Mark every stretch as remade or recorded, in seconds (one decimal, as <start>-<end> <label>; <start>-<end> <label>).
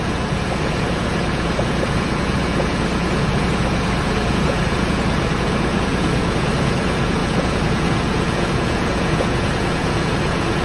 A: 0.0-10.6 remade